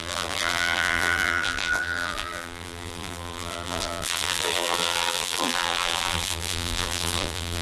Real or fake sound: fake